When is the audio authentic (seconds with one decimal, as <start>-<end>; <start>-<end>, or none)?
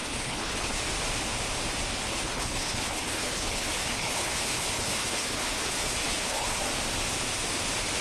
0.8-2.1; 6.6-8.0